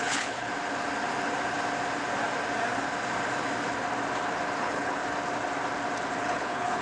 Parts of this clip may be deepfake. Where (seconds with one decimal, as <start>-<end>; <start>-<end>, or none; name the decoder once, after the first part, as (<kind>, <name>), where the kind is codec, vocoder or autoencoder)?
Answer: 0.0-0.5 (codec, HILCodec); 4.6-5.0; 6.2-6.8